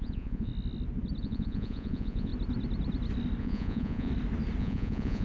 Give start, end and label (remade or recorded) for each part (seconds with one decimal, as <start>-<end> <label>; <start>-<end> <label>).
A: 0.0-0.5 remade; 0.5-1.2 recorded; 1.2-2.3 remade; 2.3-3.4 recorded; 3.4-4.1 remade; 4.1-4.6 recorded; 4.6-5.2 remade